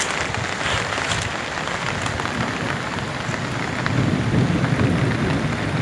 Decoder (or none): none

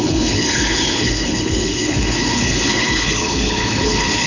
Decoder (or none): codec, HILCodec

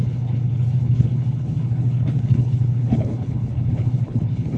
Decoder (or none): codec, HILCodec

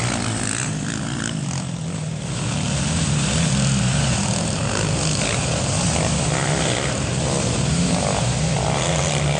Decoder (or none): none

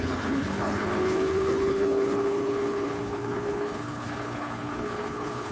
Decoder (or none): codec, HILCodec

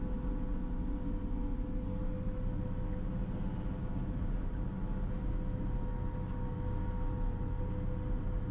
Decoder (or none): none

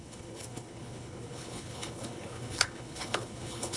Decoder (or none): codec, HILCodec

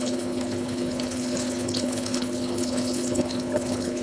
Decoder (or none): codec, HILCodec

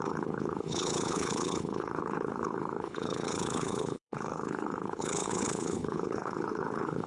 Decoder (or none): codec, HILCodec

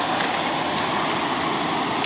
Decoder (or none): none